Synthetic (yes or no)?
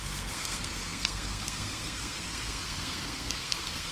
yes